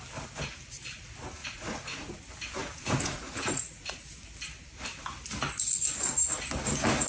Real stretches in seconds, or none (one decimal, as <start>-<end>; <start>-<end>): 0.0-1.4; 2.1-2.6; 4.0-7.1